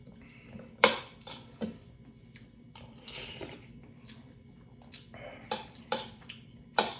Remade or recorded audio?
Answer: remade